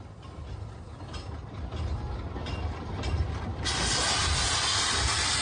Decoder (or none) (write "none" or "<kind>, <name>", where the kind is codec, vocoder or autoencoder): none